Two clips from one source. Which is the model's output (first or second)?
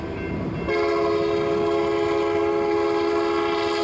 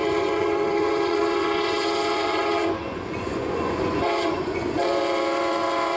second